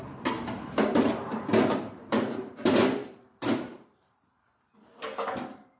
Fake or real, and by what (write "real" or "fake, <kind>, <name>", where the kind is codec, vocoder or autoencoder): fake, vocoder, BigVGAN v2